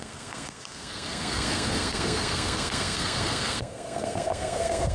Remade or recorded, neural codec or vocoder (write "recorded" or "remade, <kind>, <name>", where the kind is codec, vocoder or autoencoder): remade, codec, SNAC